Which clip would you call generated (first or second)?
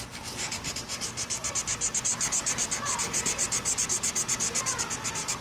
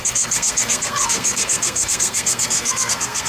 second